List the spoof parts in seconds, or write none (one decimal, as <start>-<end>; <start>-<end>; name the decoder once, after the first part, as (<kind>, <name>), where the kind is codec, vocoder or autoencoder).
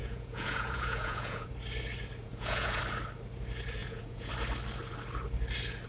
0.0-1.5 (vocoder, Vocos); 2.2-2.8; 3.8-4.3